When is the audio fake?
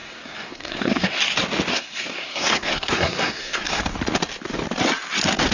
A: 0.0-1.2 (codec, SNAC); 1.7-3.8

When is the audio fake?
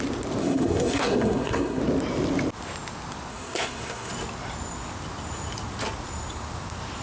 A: 0.4-1.8 (codec, SNAC); 3.3-4.1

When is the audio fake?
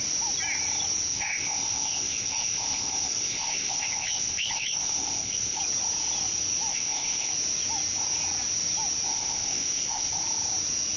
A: 1.1-5.6 (codec, ZipCodec); 6.7-7.3; 9.1-10.1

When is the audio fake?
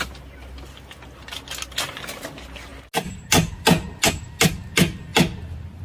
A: none